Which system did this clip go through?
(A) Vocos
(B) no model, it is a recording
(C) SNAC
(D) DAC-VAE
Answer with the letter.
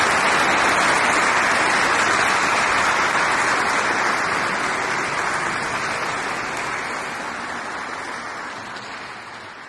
B